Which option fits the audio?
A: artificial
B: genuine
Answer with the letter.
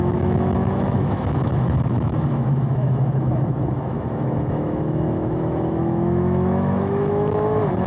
A